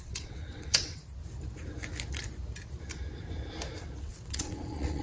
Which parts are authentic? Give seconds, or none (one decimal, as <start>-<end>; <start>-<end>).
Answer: 1.0-4.0